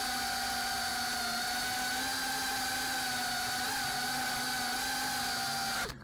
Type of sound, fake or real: real